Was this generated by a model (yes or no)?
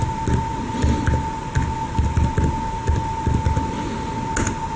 no